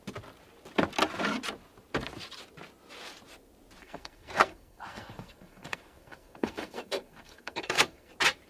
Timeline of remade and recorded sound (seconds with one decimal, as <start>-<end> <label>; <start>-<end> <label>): 0.0-3.8 recorded; 3.8-8.1 remade; 8.1-8.5 recorded